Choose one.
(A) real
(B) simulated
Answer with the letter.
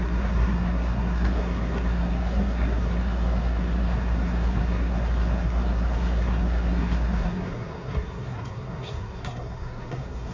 B